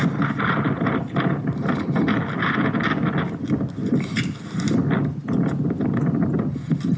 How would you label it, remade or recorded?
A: recorded